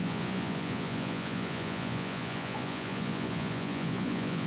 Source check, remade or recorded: remade